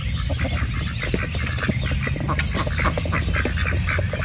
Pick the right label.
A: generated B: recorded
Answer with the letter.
B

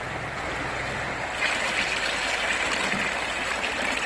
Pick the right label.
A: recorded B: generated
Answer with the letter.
A